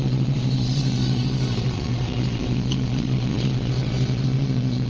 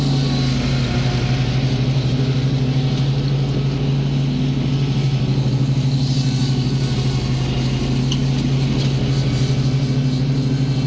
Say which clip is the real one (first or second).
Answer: second